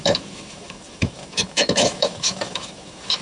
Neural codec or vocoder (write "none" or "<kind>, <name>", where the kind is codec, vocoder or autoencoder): autoencoder, DAC-VAE